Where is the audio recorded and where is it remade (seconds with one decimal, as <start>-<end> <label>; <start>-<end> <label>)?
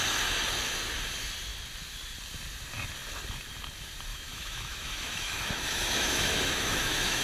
0.0-4.1 recorded; 4.1-7.2 remade